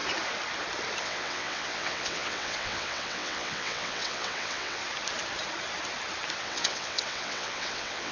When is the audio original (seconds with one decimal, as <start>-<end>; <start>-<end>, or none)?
0.0-1.0; 4.8-6.4